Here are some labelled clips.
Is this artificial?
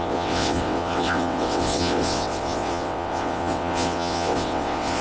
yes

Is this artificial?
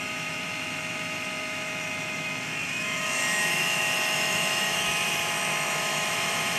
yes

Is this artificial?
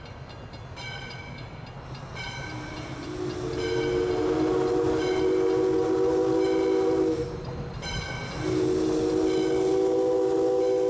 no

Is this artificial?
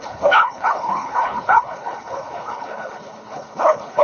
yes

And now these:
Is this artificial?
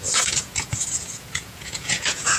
yes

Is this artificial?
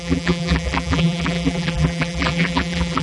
yes